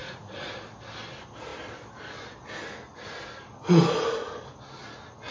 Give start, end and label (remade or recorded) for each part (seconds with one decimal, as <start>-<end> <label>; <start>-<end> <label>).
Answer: 0.0-0.5 remade; 0.5-5.3 recorded